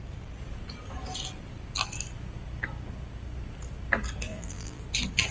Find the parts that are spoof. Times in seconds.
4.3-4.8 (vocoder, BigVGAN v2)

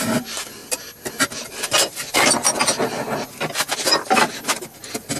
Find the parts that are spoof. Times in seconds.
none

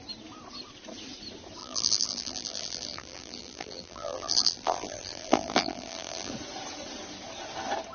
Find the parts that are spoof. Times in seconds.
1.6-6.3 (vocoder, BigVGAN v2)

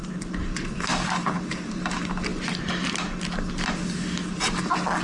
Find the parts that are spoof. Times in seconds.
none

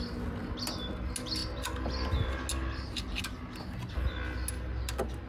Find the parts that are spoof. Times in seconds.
none